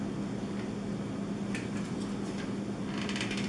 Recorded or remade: recorded